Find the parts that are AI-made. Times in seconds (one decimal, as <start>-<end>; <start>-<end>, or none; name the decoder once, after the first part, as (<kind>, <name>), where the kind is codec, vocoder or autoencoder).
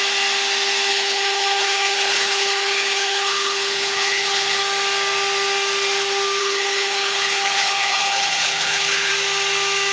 0.9-4.6 (codec, HILCodec); 6.4-9.1